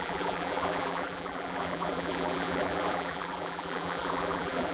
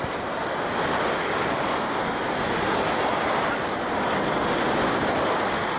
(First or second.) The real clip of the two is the second